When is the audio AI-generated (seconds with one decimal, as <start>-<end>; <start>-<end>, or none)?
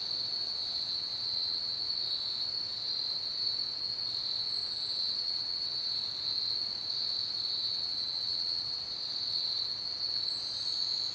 0.4-1.8; 4.6-5.9; 7.5-8.8